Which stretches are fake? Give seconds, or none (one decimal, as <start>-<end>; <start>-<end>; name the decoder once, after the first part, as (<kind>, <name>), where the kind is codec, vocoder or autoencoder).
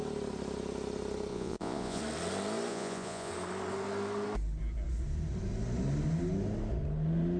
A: 1.3-2.0 (vocoder, Vocos); 2.7-3.3